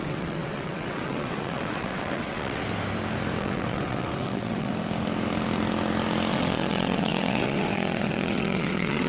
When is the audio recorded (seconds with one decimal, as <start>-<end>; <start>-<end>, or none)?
2.6-3.4; 4.7-6.3